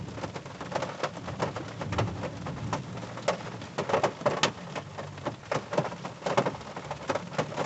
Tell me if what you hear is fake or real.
real